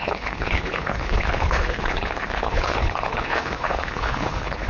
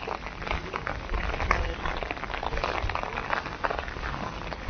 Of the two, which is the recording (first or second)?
second